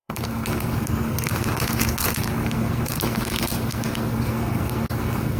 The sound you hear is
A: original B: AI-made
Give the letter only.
B